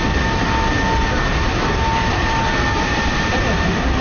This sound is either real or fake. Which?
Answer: real